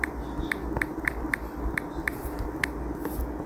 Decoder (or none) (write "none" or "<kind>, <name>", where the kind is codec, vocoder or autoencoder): none